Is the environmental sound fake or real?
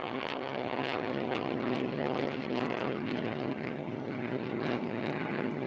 fake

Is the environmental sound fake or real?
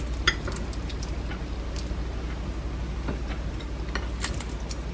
real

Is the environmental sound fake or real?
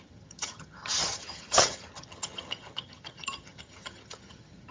fake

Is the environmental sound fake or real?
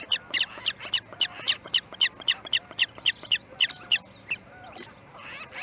real